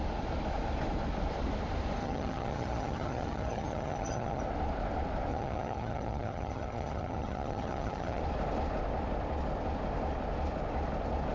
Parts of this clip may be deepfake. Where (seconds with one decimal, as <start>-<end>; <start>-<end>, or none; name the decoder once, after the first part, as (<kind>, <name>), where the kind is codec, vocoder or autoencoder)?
2.0-4.4 (vocoder, HiFi-GAN); 5.3-8.2